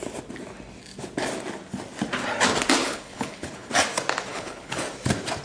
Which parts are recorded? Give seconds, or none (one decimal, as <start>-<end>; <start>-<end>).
0.0-2.8; 3.7-4.3; 4.8-5.4